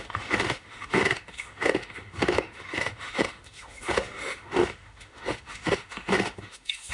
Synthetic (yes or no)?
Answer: yes